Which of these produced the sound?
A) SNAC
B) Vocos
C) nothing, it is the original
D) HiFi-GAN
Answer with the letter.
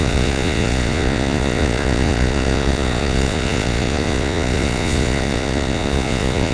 B